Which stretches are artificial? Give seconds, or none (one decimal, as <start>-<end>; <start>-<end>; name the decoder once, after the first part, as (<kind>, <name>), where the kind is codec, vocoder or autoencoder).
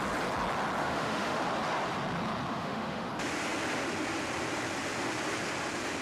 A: 0.8-1.4 (autoencoder, DAC-VAE); 2.5-3.1